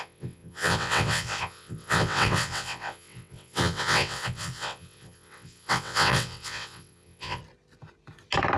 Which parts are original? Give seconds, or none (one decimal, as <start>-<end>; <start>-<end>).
7.4-8.6